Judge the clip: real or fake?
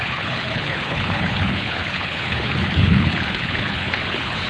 fake